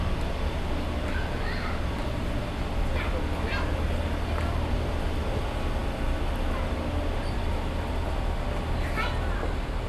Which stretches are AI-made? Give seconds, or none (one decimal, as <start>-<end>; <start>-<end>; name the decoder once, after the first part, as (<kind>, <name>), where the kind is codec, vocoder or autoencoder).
none